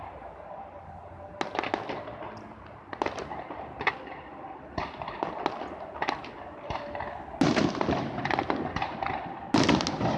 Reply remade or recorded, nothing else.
recorded